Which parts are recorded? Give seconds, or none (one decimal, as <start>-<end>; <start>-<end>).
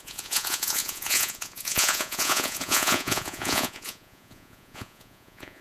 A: none